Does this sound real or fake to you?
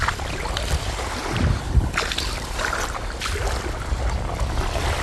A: real